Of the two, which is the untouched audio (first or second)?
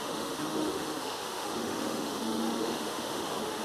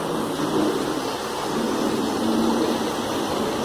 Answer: second